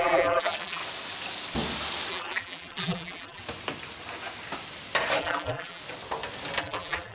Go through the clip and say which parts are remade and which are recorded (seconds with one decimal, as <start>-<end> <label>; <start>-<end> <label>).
0.0-0.8 remade; 0.8-2.1 recorded; 2.1-3.4 remade; 3.4-5.2 recorded; 5.2-5.8 remade; 5.8-6.6 recorded; 6.6-7.1 remade